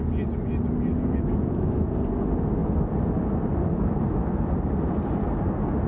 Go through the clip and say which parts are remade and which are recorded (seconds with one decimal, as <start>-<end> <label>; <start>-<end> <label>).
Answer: 0.0-0.9 recorded; 0.9-1.8 remade; 1.8-5.9 recorded